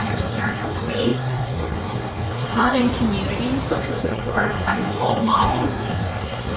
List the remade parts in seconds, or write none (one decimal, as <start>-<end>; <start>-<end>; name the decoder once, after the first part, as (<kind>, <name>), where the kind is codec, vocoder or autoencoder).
0.0-2.8 (codec, SNAC); 3.7-6.6